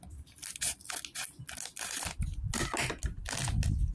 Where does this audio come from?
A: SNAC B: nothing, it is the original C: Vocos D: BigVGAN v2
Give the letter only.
B